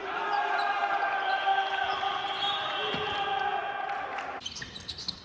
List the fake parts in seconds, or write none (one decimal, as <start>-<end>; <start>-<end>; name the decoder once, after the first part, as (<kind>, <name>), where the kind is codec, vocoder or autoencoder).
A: 0.0-2.7 (vocoder, BigVGAN v2)